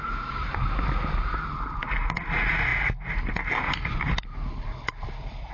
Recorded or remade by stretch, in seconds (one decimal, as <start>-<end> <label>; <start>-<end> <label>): 0.0-5.5 recorded